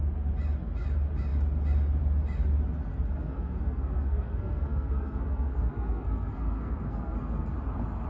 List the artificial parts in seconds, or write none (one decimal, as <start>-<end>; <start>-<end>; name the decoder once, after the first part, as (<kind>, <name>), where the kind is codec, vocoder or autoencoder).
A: 2.9-7.5 (codec, SNAC)